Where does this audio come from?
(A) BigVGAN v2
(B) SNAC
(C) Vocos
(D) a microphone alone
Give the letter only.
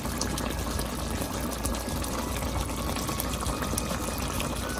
D